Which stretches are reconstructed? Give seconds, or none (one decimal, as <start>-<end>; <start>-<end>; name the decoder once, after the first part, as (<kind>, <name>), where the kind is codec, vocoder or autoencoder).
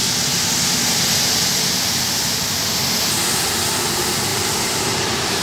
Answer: 4.3-5.4 (vocoder, BigVGAN v2)